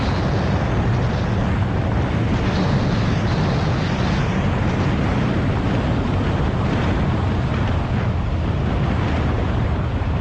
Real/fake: real